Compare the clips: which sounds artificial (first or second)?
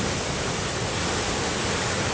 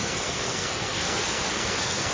second